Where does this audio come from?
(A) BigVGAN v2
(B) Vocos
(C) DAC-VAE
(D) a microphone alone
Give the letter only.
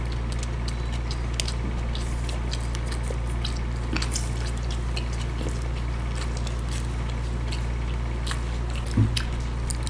D